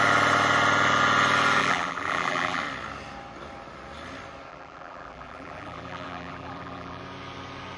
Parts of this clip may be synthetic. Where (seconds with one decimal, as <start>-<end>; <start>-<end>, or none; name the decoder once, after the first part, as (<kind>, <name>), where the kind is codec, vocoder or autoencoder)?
1.6-2.6 (vocoder, BigVGAN v2); 4.5-7.0